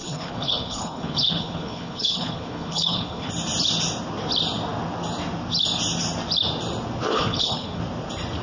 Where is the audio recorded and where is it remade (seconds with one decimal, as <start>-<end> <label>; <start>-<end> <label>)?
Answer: 0.0-3.3 remade; 3.3-7.1 recorded; 7.1-7.8 remade; 7.8-8.4 recorded